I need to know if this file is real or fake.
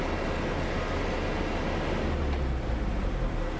real